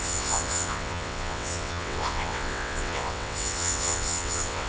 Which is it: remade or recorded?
remade